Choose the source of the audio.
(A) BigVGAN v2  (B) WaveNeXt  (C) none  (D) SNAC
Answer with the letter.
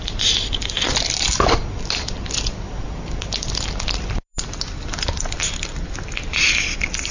C